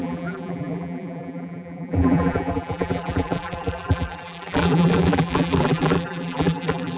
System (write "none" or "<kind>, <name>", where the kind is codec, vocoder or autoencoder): vocoder, BigVGAN v2